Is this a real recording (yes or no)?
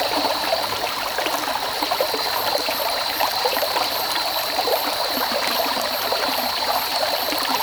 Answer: no